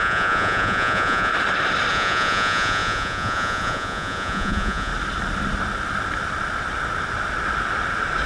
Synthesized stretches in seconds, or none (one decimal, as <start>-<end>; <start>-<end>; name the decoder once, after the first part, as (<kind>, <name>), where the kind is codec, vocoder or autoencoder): 0.0-1.3 (vocoder, Vocos); 1.9-4.9

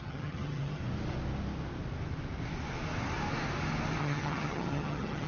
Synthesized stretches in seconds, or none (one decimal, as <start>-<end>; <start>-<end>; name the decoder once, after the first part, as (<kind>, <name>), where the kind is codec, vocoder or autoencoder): 0.0-0.8 (vocoder, HiFi-GAN); 4.0-5.3

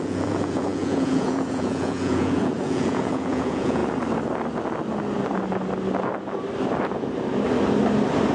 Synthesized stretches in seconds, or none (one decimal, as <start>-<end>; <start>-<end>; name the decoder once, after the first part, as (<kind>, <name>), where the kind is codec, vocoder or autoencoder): 0.0-3.8 (vocoder, Vocos)

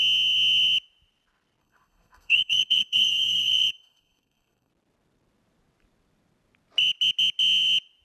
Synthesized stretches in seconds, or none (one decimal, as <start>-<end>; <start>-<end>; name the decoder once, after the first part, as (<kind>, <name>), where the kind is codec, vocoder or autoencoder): 1.6-4.7 (codec, SNAC)